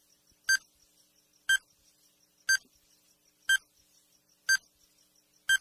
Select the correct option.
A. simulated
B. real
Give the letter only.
B